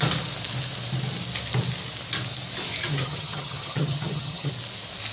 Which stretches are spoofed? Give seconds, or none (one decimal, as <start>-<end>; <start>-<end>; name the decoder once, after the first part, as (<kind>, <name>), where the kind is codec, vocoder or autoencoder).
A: 2.8-4.5 (vocoder, HiFi-GAN)